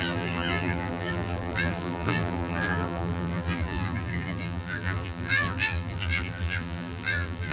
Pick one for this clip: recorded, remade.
remade